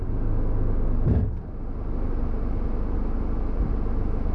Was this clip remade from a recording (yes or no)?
no